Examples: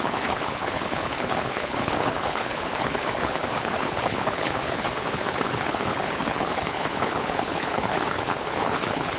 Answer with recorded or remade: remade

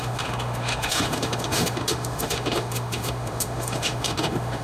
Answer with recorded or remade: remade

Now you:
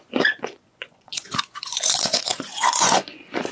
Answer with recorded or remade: remade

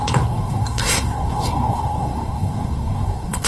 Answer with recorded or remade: remade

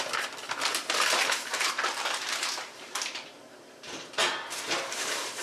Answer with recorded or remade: remade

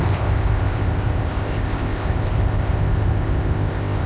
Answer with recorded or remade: remade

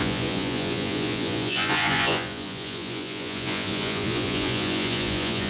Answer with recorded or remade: remade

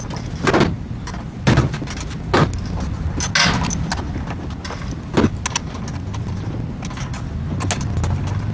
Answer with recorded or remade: recorded